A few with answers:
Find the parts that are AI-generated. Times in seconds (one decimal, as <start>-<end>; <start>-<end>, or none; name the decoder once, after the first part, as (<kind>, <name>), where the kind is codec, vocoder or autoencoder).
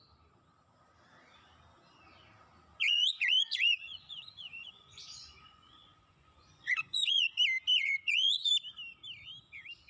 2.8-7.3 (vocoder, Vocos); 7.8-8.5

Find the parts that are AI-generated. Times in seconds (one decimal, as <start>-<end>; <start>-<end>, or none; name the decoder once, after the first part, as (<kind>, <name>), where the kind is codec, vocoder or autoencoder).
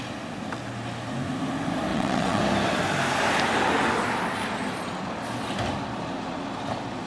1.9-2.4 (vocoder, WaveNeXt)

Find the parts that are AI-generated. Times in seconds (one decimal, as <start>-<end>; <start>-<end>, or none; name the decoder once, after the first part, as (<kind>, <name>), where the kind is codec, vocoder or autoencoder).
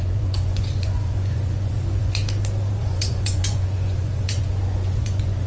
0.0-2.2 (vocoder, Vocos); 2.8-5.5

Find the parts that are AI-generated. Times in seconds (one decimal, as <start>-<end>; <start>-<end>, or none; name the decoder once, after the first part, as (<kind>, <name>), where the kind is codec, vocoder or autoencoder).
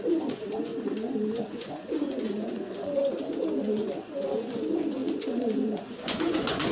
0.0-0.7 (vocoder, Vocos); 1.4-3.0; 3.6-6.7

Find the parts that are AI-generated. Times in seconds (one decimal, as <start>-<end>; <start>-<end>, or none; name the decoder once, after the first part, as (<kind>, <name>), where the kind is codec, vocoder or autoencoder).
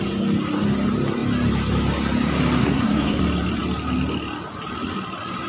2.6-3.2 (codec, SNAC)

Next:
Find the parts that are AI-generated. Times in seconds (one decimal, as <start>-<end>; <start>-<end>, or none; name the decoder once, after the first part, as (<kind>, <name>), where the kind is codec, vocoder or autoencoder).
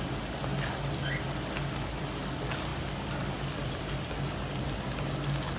2.7-4.3 (vocoder, BigVGAN v2)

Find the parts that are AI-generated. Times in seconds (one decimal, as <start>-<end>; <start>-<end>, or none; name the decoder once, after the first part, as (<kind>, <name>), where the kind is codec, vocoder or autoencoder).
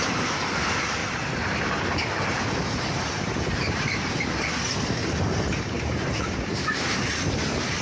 1.0-4.5 (vocoder, BigVGAN v2); 5.0-7.3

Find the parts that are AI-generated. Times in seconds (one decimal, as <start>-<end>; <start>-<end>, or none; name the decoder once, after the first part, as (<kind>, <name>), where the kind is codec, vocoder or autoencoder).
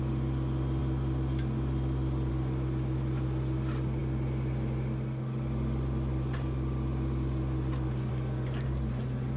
none